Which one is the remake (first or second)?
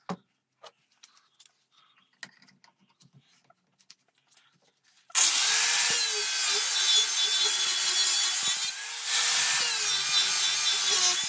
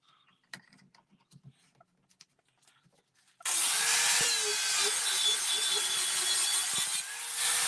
second